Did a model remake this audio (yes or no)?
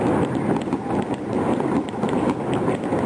no